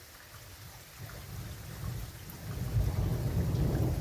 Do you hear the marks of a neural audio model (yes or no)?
no